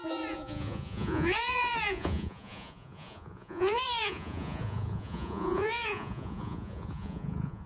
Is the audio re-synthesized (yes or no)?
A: yes